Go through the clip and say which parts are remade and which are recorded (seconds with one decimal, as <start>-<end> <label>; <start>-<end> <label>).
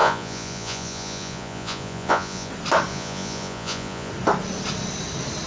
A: 0.0-2.5 remade; 2.5-2.9 recorded; 2.9-4.1 remade; 4.1-5.5 recorded